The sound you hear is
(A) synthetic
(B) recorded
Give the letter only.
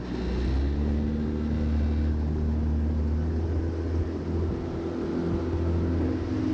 B